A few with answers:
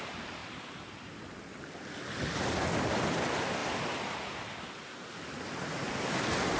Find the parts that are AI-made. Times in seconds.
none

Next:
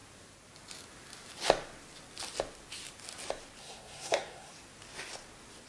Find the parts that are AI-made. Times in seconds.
3.6-4.5 (codec, SNAC)